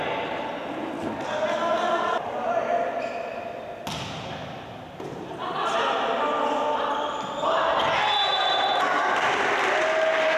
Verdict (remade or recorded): recorded